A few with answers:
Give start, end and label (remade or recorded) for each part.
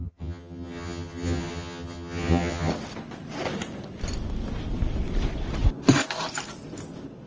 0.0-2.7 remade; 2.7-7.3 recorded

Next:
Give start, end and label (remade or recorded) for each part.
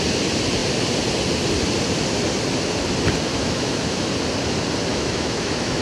0.0-3.3 recorded; 3.3-4.1 remade; 4.1-4.9 recorded; 4.9-5.8 remade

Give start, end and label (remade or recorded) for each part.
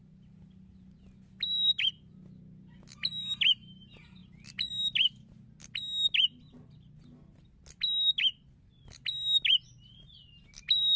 0.0-11.0 recorded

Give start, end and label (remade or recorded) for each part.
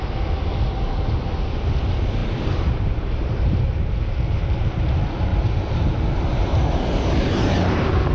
0.0-2.2 recorded; 2.2-3.9 remade; 3.9-5.3 recorded; 5.3-8.1 remade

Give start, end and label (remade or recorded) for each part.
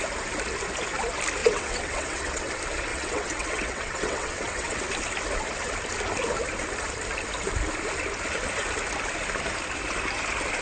0.0-1.4 recorded; 1.4-2.5 remade; 2.5-2.9 recorded; 2.9-4.9 remade; 4.9-10.6 recorded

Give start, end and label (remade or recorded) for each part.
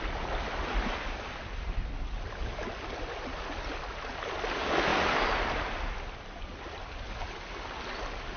0.0-8.4 recorded